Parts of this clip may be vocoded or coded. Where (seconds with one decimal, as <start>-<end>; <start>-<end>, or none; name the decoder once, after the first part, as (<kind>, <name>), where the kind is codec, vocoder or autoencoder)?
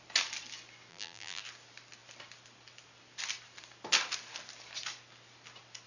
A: 0.9-1.4 (vocoder, BigVGAN v2)